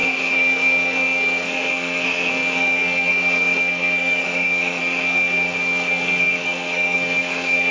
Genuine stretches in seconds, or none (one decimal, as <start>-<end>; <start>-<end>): none